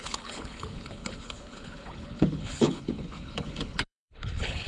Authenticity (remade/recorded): remade